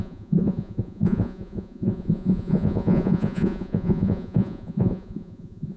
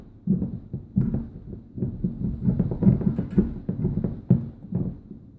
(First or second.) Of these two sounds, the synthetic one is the first